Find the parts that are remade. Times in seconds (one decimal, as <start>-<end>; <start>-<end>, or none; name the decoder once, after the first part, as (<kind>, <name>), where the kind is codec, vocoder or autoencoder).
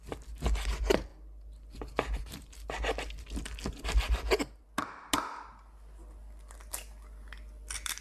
none